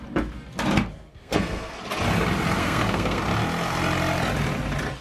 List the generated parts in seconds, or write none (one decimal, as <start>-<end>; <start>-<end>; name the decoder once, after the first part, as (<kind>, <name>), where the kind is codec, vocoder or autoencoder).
1.1-1.8 (codec, SNAC); 2.6-3.2